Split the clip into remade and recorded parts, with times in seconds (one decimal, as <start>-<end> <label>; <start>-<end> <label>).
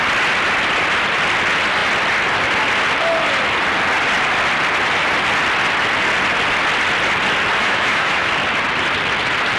0.0-7.6 recorded; 7.6-8.3 remade; 8.3-9.6 recorded